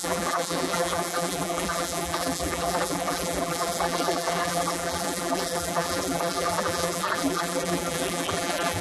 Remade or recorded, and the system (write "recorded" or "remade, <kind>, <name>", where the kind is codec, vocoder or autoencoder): remade, vocoder, BigVGAN v2